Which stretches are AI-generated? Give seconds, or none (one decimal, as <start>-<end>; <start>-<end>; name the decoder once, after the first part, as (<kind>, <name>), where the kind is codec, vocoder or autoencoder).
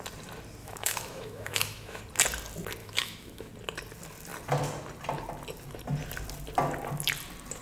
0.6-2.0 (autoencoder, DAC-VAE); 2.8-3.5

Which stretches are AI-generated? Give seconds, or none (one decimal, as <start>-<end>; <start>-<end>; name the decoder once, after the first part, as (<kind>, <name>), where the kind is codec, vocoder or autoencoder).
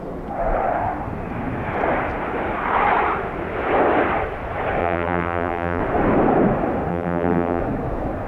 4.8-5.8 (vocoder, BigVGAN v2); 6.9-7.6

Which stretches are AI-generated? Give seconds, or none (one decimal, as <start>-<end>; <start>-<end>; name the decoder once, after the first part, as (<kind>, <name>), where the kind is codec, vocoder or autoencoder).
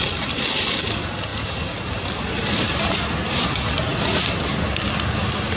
none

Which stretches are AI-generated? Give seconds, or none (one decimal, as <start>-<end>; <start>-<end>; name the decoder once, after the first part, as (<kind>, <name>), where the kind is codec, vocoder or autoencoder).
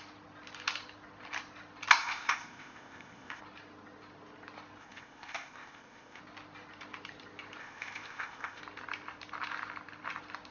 2.0-3.4 (codec, ZipCodec); 4.8-6.2; 7.6-8.6